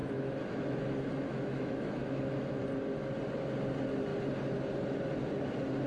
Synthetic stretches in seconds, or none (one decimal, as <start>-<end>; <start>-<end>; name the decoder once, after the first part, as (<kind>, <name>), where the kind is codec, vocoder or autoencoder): 0.0-2.6 (autoencoder, DAC-VAE)